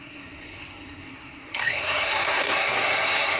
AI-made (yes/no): yes